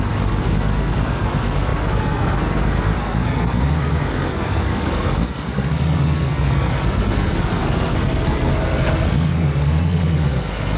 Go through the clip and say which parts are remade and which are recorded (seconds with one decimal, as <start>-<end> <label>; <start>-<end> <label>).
0.0-10.8 remade